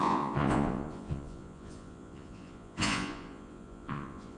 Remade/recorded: remade